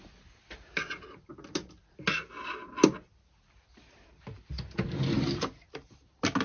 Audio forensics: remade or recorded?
recorded